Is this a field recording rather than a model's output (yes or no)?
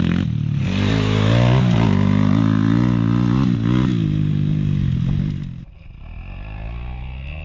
yes